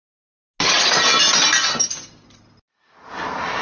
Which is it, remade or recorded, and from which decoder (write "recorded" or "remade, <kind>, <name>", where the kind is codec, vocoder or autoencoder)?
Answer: recorded